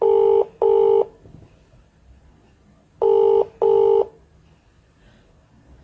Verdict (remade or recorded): recorded